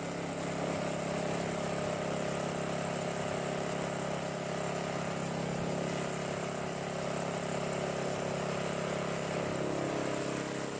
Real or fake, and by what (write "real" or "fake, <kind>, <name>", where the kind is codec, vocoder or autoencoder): real